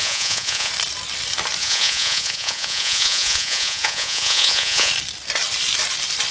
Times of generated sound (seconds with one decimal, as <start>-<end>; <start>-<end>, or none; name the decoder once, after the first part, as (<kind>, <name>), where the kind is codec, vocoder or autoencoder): 0.0-0.7 (vocoder, Vocos); 1.6-4.9